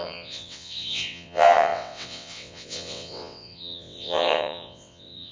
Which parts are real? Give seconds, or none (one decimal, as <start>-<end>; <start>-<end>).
none

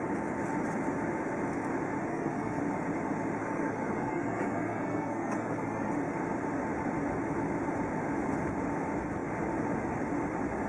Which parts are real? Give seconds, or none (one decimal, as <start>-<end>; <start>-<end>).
0.0-2.1; 2.6-3.4; 5.9-10.7

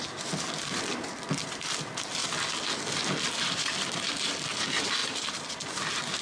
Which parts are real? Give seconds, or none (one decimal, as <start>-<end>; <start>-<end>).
0.0-6.2

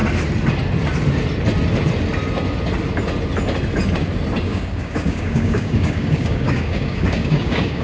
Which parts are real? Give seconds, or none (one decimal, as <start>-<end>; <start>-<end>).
0.0-4.4

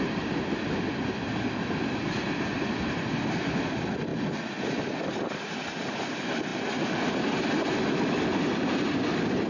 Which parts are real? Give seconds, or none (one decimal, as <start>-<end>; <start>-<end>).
0.0-9.5

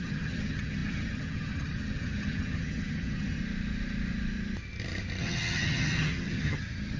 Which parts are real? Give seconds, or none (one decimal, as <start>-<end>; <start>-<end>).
3.4-5.2

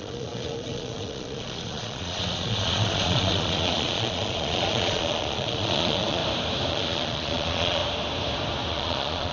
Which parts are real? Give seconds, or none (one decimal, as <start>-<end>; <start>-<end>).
6.2-6.7; 7.8-8.7